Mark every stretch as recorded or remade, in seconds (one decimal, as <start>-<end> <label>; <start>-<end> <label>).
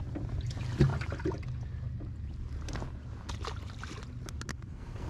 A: 0.0-4.5 recorded; 4.5-5.1 remade